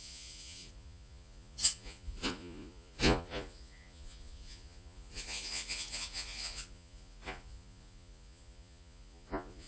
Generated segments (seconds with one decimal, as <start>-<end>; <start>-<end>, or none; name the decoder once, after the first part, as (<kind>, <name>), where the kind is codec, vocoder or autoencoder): 0.0-9.7 (vocoder, Vocos)